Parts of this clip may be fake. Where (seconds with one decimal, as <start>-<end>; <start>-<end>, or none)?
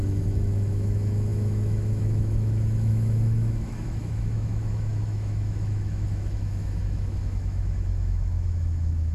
0.0-9.1